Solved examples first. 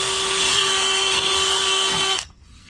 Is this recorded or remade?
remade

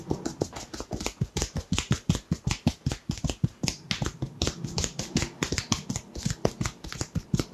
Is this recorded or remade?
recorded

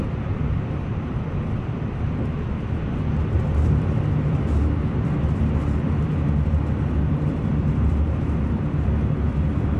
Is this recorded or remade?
remade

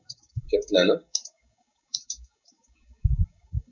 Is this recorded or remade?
remade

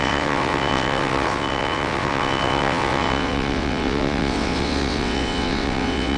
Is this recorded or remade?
remade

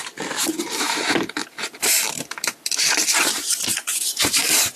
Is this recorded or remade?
remade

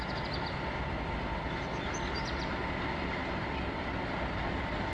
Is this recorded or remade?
recorded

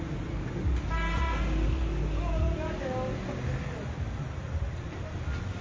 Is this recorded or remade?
recorded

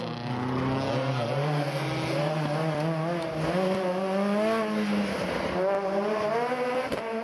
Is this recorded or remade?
recorded